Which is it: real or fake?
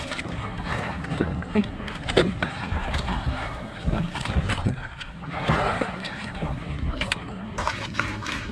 fake